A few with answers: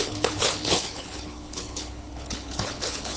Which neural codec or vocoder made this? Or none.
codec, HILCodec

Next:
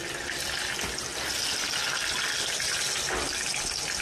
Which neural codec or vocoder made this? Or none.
none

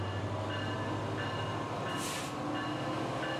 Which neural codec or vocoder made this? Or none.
none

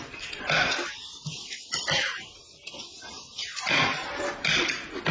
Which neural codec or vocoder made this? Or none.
vocoder, BigVGAN v2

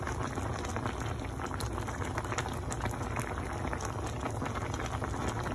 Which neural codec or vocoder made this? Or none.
none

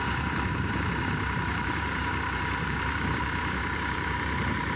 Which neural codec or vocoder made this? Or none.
vocoder, BigVGAN v2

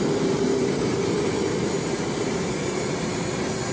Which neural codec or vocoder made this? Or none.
none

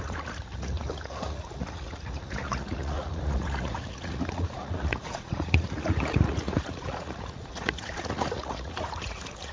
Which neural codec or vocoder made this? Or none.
vocoder, Vocos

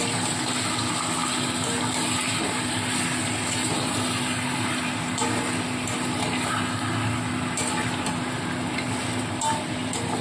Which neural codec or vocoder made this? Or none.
none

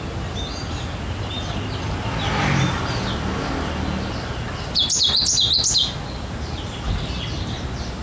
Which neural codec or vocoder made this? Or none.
none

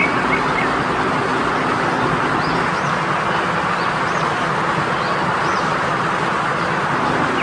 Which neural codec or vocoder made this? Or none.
none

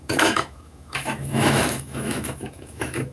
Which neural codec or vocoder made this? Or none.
autoencoder, DAC-VAE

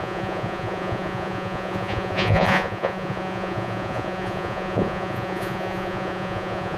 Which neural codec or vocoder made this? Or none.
vocoder, Vocos